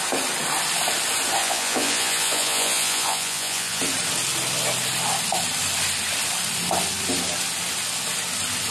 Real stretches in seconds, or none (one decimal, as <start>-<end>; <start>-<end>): 0.0-1.4; 3.8-8.7